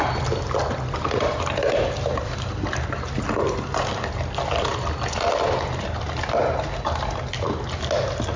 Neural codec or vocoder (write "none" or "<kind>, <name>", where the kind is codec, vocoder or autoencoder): none